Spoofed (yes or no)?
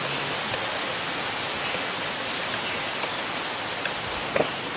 no